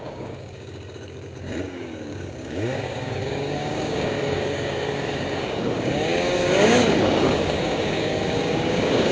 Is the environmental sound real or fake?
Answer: fake